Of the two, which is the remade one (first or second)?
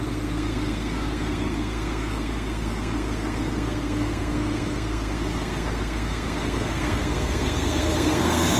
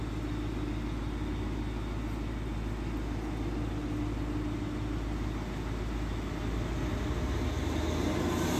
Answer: first